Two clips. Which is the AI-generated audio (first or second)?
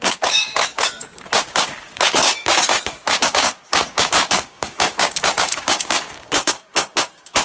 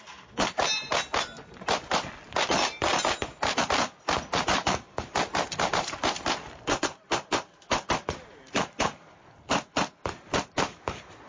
first